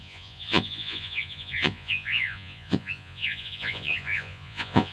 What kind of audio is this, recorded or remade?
remade